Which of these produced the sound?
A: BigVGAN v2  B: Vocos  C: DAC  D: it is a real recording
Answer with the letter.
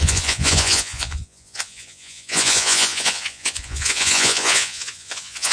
B